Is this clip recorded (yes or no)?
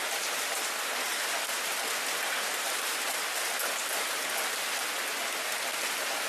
yes